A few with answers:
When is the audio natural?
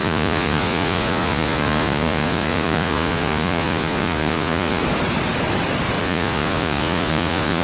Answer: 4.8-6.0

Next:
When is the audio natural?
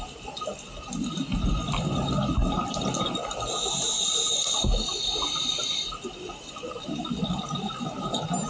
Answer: 0.0-8.5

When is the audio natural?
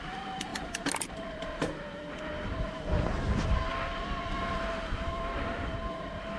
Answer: 0.0-6.4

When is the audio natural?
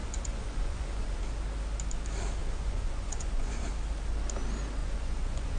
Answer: 1.2-2.4; 3.7-4.8